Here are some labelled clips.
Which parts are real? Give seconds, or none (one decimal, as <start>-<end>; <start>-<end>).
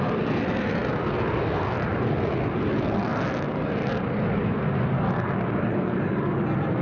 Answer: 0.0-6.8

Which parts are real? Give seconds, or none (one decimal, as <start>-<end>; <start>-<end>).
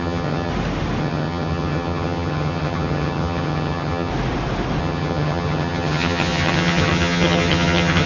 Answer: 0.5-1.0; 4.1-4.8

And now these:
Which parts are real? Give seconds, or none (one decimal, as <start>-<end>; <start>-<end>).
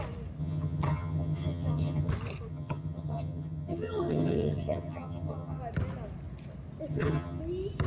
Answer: 0.0-0.4; 2.1-2.5; 5.6-6.9; 7.4-7.9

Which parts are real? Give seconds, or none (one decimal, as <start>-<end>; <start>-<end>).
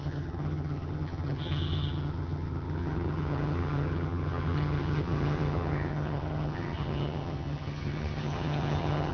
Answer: none